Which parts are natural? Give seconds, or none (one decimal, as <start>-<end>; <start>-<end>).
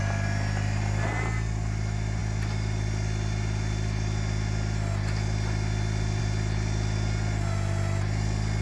0.0-8.6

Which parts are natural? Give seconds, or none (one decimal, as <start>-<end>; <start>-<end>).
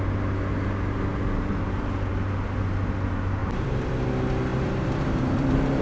0.0-3.4; 3.9-4.5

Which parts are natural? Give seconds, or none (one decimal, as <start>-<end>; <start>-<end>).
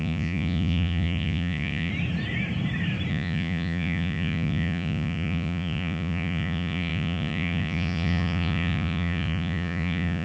1.9-3.1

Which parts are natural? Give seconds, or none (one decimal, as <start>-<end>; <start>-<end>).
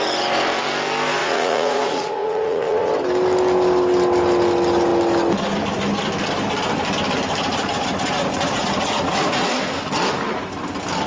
0.0-1.2; 2.9-7.4; 9.5-11.1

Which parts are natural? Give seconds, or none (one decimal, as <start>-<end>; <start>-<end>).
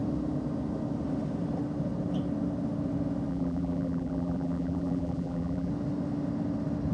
0.0-3.3; 5.7-6.9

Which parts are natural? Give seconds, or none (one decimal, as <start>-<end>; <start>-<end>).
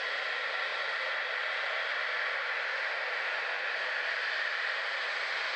0.0-5.6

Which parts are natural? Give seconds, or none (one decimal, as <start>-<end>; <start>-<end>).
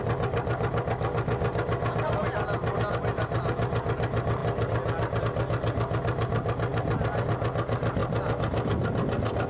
0.0-9.5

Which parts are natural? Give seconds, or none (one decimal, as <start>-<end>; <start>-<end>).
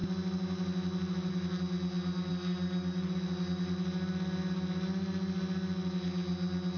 0.0-6.8